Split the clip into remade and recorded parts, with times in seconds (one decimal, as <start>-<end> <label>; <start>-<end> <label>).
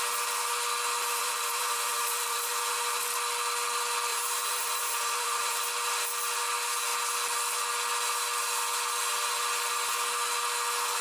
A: 0.0-1.2 recorded; 1.2-2.5 remade; 2.5-4.1 recorded; 4.1-5.6 remade; 5.6-11.0 recorded